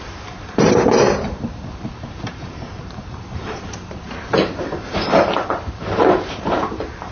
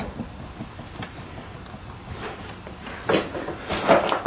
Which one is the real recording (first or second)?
second